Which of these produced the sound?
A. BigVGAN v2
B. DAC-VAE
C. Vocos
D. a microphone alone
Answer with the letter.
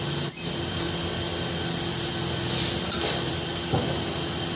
D